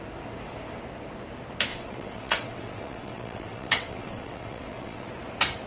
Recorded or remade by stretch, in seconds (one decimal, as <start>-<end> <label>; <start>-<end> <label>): 0.0-1.7 recorded; 1.7-5.1 remade; 5.1-5.7 recorded